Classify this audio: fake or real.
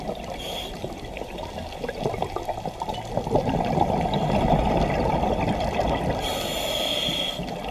real